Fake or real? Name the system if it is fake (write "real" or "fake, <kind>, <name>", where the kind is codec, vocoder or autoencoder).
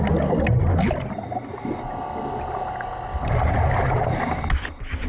real